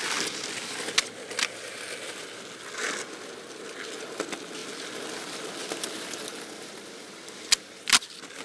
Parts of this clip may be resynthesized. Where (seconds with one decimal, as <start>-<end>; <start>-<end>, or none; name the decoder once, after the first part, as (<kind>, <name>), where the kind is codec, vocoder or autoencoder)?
none